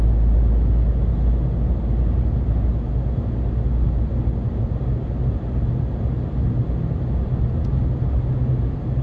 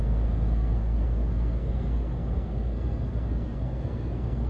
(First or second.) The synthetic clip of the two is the second